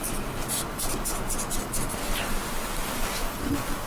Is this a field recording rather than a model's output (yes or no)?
yes